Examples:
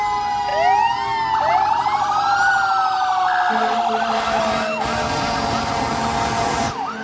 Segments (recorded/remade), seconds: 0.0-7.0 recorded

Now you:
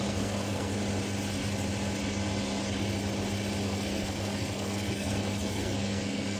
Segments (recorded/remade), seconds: 0.0-0.8 remade; 0.8-3.6 recorded; 3.6-6.4 remade

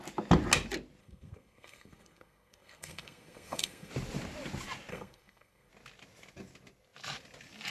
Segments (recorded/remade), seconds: 0.0-1.0 recorded; 1.0-3.9 remade; 3.9-4.9 recorded; 4.9-5.7 remade; 5.7-7.7 recorded

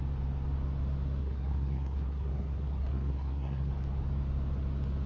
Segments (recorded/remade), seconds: 0.0-1.2 recorded; 1.2-3.7 remade; 3.7-5.1 recorded